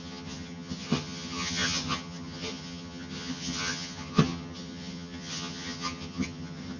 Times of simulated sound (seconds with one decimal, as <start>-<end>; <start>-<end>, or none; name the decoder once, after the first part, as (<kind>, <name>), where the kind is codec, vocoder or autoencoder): 0.0-6.8 (vocoder, HiFi-GAN)